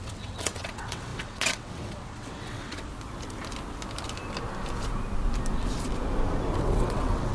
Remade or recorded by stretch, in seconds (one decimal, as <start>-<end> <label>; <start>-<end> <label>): 0.0-2.9 remade; 2.9-6.6 recorded; 6.6-7.3 remade